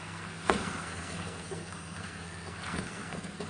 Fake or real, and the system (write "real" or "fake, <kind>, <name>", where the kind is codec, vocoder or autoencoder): fake, codec, SNAC